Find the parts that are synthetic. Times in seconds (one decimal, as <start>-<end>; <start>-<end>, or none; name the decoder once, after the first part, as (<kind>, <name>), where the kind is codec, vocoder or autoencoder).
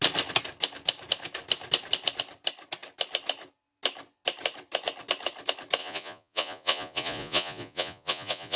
5.8-8.6 (vocoder, Vocos)